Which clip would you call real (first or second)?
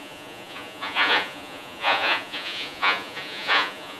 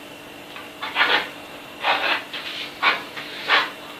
second